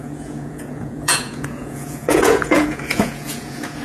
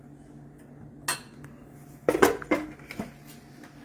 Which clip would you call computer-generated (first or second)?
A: first